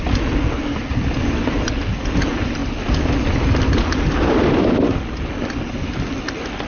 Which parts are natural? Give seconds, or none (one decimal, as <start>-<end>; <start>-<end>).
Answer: 0.0-6.7